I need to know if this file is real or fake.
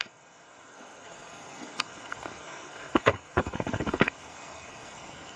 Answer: fake